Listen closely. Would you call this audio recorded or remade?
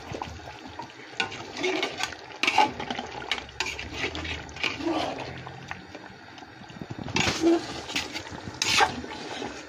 recorded